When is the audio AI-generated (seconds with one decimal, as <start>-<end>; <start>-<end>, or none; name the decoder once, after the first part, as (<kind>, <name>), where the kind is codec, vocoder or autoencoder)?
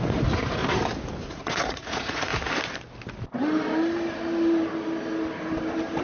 0.0-0.6 (vocoder, Vocos); 1.3-2.3